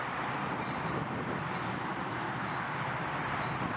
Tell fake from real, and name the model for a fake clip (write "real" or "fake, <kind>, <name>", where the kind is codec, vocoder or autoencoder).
fake, vocoder, BigVGAN v2